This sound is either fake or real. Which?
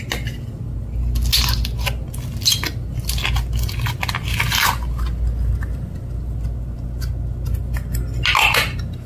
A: real